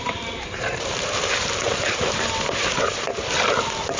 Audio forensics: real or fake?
fake